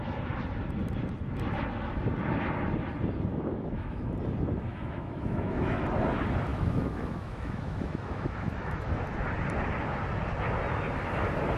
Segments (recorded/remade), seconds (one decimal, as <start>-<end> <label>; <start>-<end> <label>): 0.0-3.3 recorded; 3.3-4.1 remade; 4.1-4.7 recorded; 4.7-5.8 remade; 5.8-6.5 recorded; 6.5-8.9 remade; 8.9-11.6 recorded